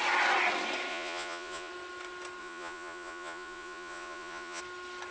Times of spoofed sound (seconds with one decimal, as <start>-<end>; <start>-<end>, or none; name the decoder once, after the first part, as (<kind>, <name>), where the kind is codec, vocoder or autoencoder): 0.9-1.7 (vocoder, Vocos); 2.4-4.6